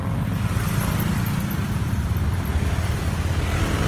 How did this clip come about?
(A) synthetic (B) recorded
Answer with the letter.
B